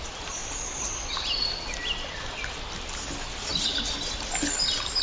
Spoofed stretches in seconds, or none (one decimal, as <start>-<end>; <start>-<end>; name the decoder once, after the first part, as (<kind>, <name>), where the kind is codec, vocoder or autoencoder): none